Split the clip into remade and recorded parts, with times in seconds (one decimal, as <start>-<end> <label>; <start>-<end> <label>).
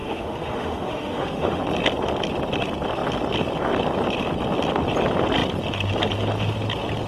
0.0-1.6 remade; 1.6-7.1 recorded